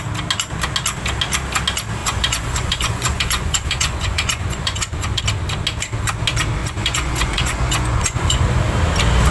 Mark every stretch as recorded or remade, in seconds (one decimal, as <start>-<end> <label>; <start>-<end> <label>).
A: 0.0-2.0 recorded; 2.0-5.2 remade; 5.2-6.6 recorded; 6.6-8.6 remade; 8.6-9.3 recorded

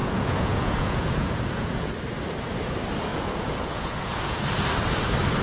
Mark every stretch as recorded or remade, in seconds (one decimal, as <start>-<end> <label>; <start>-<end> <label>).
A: 0.0-1.9 remade; 1.9-3.1 recorded; 3.1-4.4 remade; 4.4-5.4 recorded

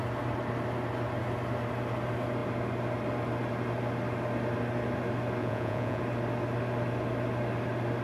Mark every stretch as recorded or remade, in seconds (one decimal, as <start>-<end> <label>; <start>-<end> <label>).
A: 0.0-5.4 recorded; 5.4-6.0 remade; 6.0-8.0 recorded

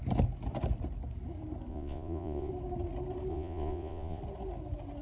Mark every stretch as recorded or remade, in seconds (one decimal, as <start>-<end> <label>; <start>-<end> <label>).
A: 0.0-1.7 recorded; 1.7-2.5 remade; 2.5-3.3 recorded; 3.3-4.2 remade; 4.2-5.0 recorded

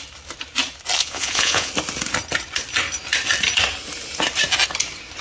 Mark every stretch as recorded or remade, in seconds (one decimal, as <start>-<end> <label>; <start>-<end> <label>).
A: 0.0-1.0 recorded; 1.0-1.7 remade; 1.7-5.2 recorded

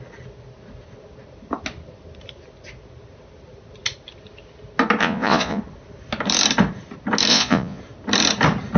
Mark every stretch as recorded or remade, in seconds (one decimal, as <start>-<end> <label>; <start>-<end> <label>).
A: 0.0-5.0 recorded; 5.0-5.6 remade; 5.6-7.3 recorded; 7.3-7.8 remade; 7.8-8.8 recorded